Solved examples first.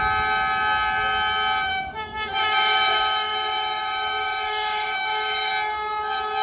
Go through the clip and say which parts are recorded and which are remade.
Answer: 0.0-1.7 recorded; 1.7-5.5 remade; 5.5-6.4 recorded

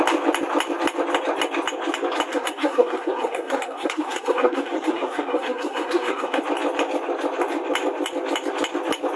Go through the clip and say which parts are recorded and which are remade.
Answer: 0.0-2.3 recorded; 2.3-6.4 remade; 6.4-9.2 recorded

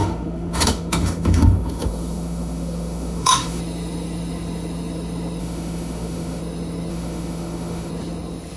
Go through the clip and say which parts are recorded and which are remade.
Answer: 0.0-3.6 remade; 3.6-5.4 recorded; 5.4-6.4 remade; 6.4-6.9 recorded; 6.9-7.9 remade; 7.9-8.6 recorded

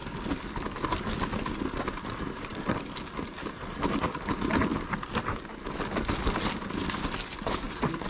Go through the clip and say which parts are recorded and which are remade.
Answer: 0.0-8.1 recorded

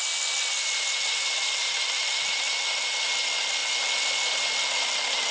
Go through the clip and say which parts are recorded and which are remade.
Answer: 0.0-5.3 recorded

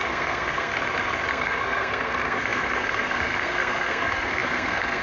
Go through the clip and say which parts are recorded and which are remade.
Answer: 0.0-0.7 remade; 0.7-1.3 recorded; 1.3-5.0 remade